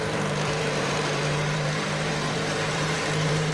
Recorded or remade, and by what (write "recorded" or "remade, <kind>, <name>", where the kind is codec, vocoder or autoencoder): remade, vocoder, BigVGAN v2